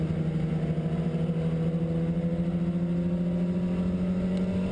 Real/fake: real